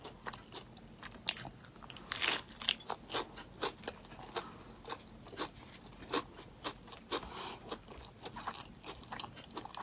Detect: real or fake real